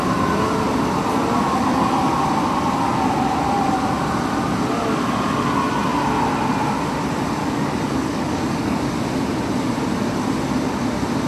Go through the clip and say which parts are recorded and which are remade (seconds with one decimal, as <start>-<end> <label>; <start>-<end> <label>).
0.0-7.4 recorded; 7.4-8.8 remade; 8.8-11.3 recorded